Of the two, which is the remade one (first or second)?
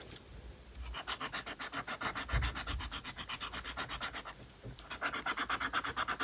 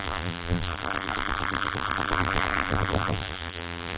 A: second